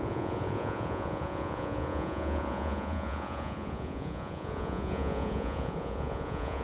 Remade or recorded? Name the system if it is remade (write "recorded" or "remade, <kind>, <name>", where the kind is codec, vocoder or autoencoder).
remade, vocoder, Vocos